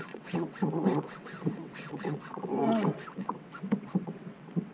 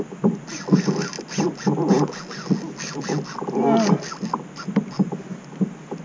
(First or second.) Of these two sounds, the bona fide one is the second